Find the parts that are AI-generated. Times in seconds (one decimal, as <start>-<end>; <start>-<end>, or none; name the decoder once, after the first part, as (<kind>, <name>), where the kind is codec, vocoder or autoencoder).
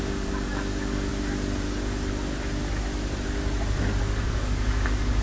0.0-1.1 (codec, DAC); 4.0-5.2